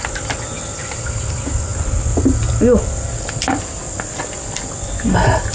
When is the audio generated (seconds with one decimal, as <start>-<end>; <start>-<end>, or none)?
none